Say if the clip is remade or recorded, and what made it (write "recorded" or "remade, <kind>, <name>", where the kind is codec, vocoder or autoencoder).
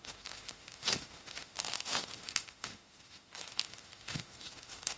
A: remade, autoencoder, DAC-VAE